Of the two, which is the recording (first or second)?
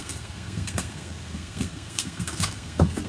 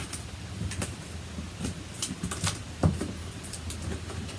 second